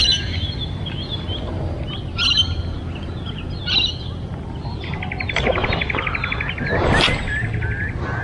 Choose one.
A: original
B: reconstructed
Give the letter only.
A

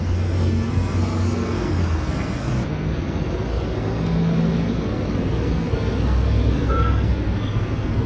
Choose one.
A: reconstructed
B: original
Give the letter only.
A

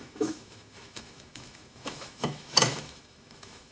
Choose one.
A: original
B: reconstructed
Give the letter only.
B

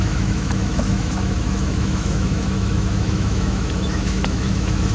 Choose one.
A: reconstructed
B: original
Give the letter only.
A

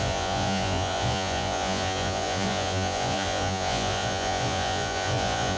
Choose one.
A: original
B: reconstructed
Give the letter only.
B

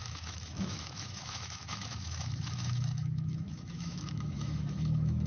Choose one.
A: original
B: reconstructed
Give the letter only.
B